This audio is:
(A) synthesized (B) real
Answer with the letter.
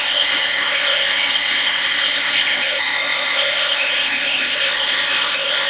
A